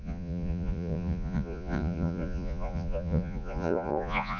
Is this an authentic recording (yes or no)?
no